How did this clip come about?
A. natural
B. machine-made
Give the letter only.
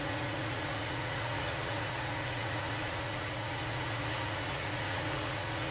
B